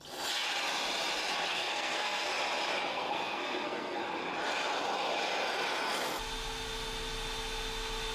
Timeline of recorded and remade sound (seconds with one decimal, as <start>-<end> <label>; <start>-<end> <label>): 0.0-1.5 recorded; 1.5-2.3 remade; 2.3-2.9 recorded; 2.9-4.0 remade; 4.0-8.1 recorded